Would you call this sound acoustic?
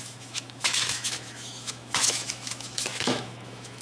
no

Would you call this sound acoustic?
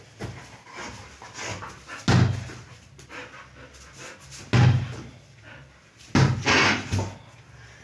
yes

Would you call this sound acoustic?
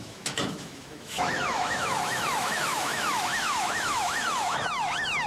no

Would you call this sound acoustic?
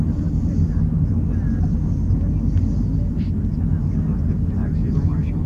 yes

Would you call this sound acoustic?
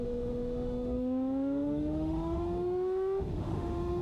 no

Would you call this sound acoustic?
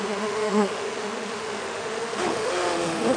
no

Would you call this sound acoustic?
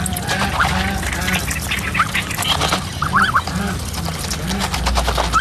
yes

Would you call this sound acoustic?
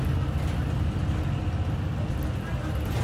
yes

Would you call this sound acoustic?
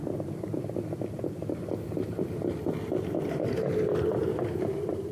yes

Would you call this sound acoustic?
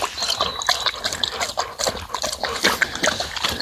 yes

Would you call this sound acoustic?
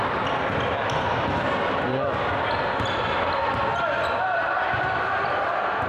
yes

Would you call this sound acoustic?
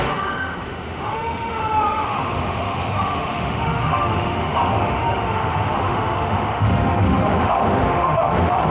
no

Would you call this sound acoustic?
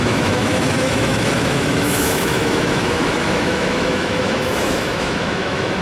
no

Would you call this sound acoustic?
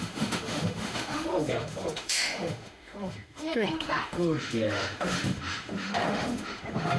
no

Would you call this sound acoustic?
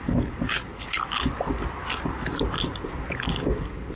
yes